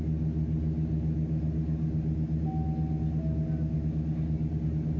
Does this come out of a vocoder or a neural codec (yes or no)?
no